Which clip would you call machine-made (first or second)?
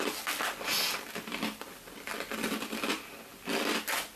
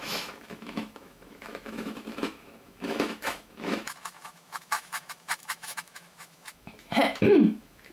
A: second